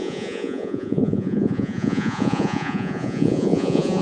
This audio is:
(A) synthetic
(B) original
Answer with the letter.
A